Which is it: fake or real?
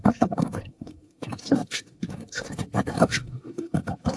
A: fake